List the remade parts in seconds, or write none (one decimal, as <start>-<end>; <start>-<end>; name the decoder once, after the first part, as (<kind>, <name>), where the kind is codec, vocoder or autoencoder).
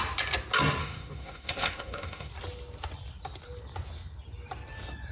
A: 0.8-2.3 (autoencoder, DAC-VAE)